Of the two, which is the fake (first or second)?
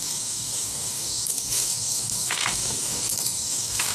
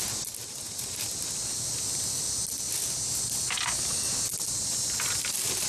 first